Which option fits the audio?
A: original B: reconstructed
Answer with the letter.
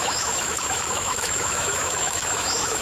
B